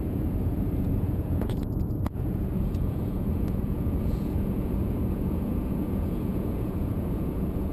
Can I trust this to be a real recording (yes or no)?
no